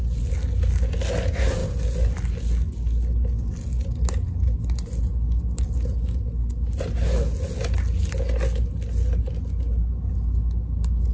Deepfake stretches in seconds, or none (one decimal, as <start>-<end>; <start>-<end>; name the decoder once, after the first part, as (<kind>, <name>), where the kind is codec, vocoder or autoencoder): none